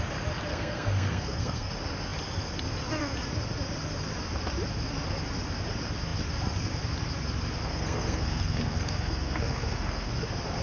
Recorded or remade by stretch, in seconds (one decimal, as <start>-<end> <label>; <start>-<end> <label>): 0.0-0.5 recorded; 0.5-1.7 remade; 1.7-7.7 recorded; 7.7-10.1 remade; 10.1-10.6 recorded